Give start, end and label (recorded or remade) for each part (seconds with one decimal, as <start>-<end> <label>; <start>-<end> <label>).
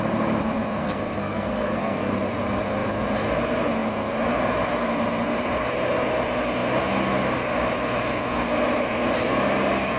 0.0-0.8 recorded; 0.8-2.1 remade; 2.1-10.0 recorded